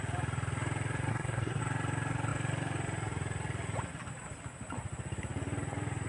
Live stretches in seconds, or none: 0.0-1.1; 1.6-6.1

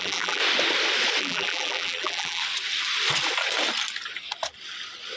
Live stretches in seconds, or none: 0.4-1.2; 2.4-5.2

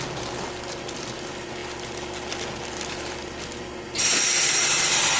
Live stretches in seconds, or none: 0.0-5.2

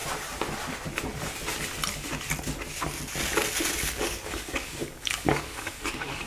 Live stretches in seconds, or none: 0.0-3.8

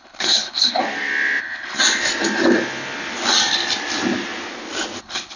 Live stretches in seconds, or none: 0.8-1.4; 1.8-5.0

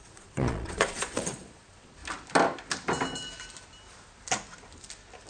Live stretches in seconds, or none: 2.0-5.3

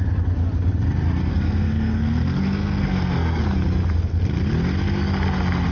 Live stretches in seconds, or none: 0.0-1.3; 3.4-5.7